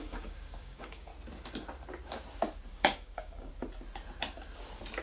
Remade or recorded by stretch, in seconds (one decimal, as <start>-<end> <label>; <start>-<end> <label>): 0.0-1.1 remade; 1.1-2.7 recorded; 2.7-3.5 remade; 3.5-5.0 recorded